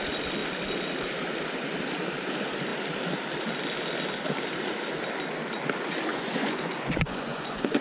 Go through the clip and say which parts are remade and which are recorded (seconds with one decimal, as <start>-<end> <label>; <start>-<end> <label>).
0.0-6.1 recorded; 6.1-7.8 remade